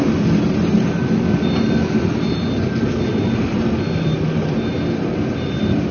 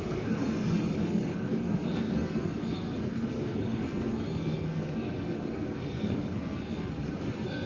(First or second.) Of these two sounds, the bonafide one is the first